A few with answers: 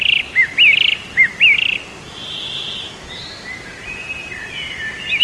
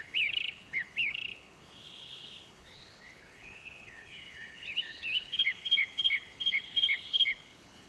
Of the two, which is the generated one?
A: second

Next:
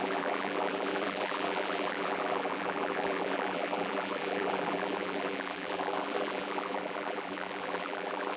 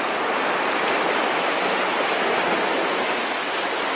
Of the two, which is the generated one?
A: first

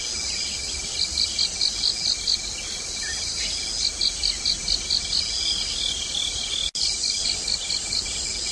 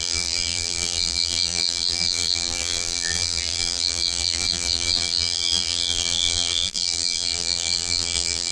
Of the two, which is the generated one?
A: second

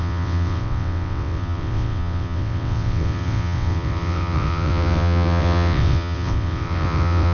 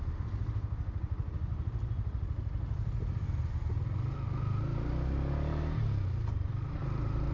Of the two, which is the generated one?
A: first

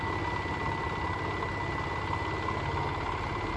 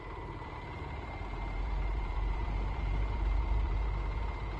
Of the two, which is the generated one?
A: second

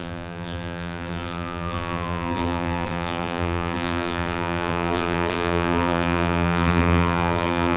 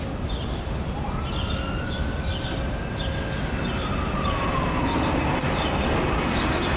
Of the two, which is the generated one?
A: first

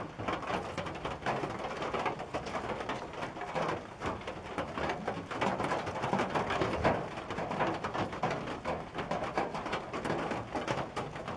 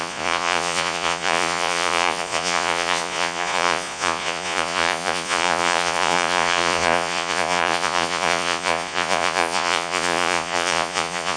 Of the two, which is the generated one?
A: second